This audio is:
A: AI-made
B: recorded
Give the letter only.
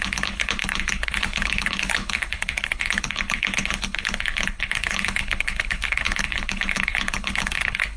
A